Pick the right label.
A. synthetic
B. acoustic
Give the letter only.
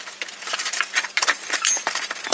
B